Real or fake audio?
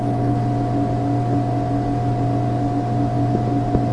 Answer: real